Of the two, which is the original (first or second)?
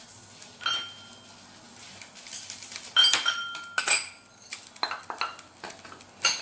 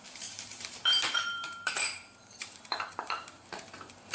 first